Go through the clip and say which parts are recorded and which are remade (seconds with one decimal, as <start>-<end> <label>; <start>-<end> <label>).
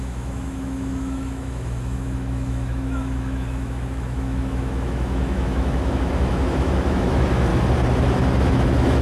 0.0-7.5 remade; 7.5-8.4 recorded; 8.4-9.0 remade